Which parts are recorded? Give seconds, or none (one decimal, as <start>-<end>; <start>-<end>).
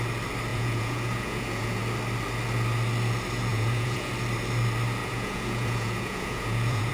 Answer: 0.0-0.5; 1.8-3.5; 4.1-5.0